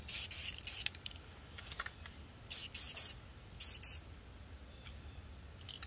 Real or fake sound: real